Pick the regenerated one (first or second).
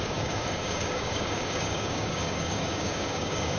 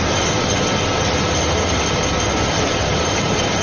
first